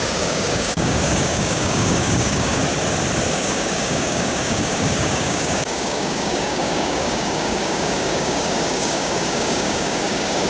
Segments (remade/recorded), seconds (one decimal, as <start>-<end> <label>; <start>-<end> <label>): 0.0-2.6 remade; 2.6-3.3 recorded; 3.3-10.5 remade